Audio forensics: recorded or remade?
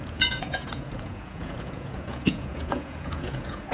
remade